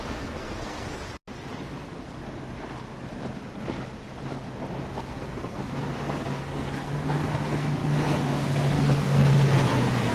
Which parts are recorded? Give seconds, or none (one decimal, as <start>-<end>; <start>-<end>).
1.0-1.8; 2.2-4.9